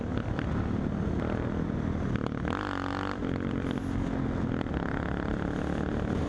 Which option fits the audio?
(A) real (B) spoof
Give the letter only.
A